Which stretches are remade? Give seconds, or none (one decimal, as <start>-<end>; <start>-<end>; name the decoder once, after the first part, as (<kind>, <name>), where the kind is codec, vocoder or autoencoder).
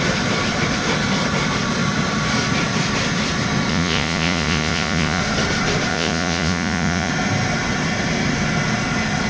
3.7-5.2 (vocoder, Vocos); 5.9-7.1